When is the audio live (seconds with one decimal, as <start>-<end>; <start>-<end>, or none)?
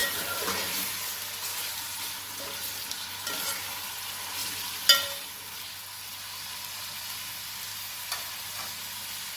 0.9-1.5; 2.0-9.4